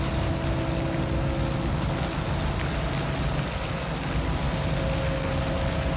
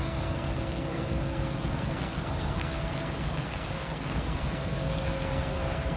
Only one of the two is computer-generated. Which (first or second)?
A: second